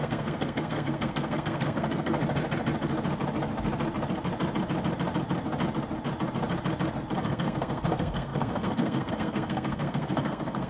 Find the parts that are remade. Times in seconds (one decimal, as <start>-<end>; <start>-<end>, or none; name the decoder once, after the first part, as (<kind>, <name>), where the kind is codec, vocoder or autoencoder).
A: 0.0-2.2 (codec, SNAC); 7.2-10.7